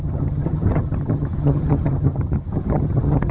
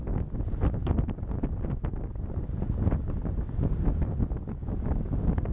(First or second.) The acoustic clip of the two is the second